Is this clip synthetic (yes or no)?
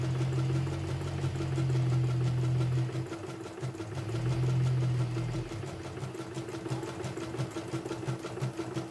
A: no